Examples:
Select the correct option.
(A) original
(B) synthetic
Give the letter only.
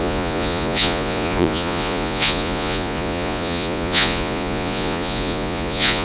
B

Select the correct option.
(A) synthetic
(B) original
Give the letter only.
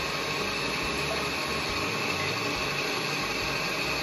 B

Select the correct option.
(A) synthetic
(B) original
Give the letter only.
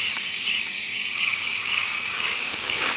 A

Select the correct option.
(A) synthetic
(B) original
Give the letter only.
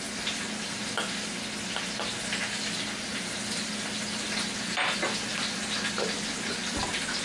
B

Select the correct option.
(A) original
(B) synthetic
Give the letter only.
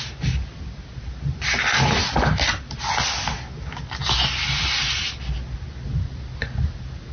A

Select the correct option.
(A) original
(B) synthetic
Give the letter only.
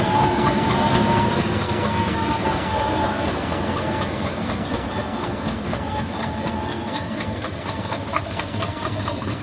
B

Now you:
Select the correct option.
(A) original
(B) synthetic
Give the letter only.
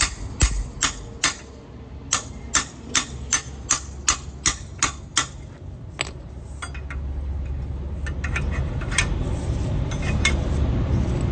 A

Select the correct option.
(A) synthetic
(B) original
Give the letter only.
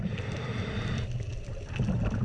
B